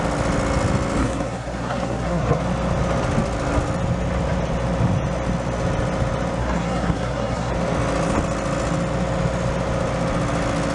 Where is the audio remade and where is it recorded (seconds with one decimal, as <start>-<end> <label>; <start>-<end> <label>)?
0.0-1.0 recorded; 1.0-2.4 remade; 2.4-6.4 recorded; 6.4-7.5 remade; 7.5-10.7 recorded